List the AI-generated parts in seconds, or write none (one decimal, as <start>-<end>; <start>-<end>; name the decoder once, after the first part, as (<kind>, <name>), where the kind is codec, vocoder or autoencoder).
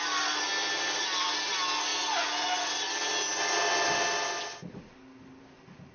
none